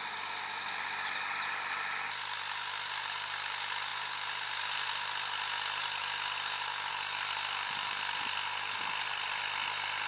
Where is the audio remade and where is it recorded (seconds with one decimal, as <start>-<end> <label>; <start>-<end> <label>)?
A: 0.0-10.1 recorded